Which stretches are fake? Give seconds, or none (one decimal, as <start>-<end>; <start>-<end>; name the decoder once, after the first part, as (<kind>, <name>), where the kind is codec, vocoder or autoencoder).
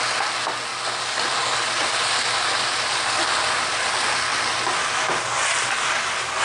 none